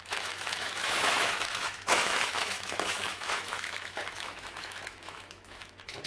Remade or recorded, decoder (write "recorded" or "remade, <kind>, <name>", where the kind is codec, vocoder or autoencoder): remade, autoencoder, DAC-VAE